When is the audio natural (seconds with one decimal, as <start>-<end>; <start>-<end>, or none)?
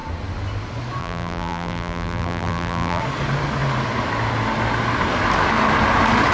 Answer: 0.0-1.0; 3.0-6.3